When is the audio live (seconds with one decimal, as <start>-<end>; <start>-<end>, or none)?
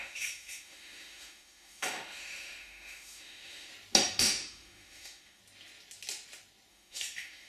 3.7-4.2; 5.4-6.7